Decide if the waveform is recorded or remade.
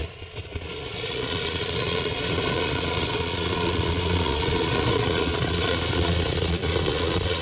remade